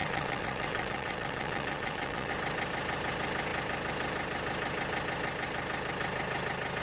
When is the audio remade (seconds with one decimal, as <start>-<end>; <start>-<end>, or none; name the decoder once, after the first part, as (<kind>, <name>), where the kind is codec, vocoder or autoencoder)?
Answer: 0.0-2.3 (vocoder, WaveNeXt)